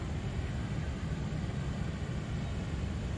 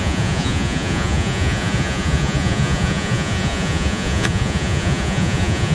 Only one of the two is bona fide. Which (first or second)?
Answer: first